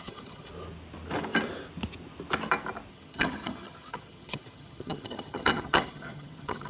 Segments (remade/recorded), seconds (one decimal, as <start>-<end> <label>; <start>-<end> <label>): 0.0-0.5 remade; 0.5-2.9 recorded; 2.9-6.7 remade